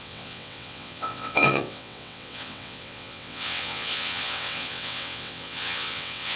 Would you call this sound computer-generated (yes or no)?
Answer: yes